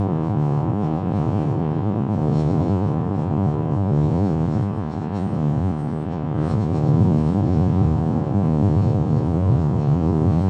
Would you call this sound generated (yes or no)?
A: yes